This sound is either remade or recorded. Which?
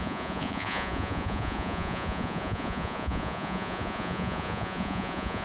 remade